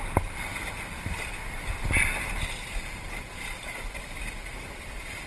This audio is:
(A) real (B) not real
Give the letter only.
A